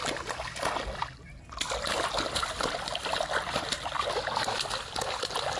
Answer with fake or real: real